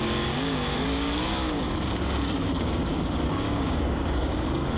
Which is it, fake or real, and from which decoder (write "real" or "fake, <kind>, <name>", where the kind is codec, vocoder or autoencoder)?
fake, codec, DAC